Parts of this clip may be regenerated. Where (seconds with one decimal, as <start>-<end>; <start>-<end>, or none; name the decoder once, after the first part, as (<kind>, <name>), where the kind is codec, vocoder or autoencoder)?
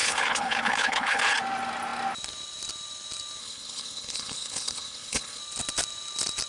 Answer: 0.0-1.2 (codec, HILCodec); 3.4-5.4